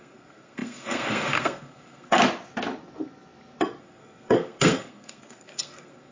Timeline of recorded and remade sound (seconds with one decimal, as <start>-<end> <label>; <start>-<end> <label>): 0.0-2.2 remade; 2.2-3.8 recorded; 3.8-6.1 remade